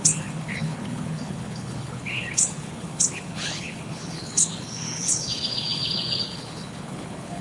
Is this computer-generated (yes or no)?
yes